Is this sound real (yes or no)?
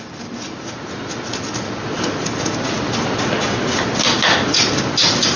yes